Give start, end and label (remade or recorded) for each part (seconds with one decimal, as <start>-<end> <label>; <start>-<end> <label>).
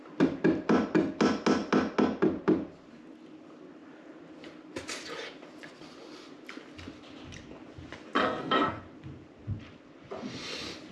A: 0.0-8.2 recorded; 8.2-8.8 remade; 8.8-10.9 recorded